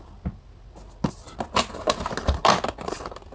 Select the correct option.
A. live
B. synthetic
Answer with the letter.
A